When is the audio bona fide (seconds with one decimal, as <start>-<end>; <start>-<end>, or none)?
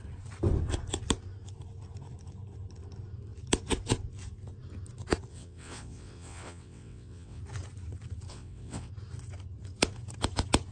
0.0-5.3; 7.4-8.3; 8.9-10.7